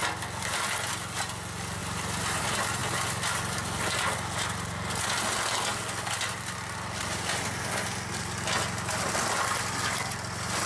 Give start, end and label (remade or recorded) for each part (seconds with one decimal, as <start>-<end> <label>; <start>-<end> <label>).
0.0-10.7 recorded

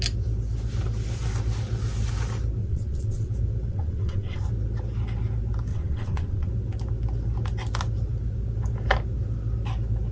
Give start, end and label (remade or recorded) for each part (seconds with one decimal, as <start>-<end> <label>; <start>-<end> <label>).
0.0-2.6 recorded; 2.6-3.3 remade; 3.3-3.7 recorded; 3.7-4.4 remade; 4.4-5.7 recorded; 5.7-6.5 remade; 6.5-10.1 recorded

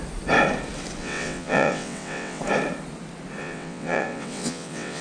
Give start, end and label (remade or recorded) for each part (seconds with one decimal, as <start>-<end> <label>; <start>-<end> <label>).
0.0-1.0 recorded; 1.0-2.4 remade; 2.4-3.4 recorded; 3.4-5.0 remade